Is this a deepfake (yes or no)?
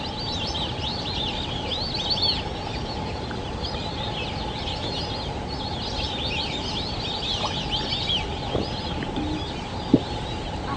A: no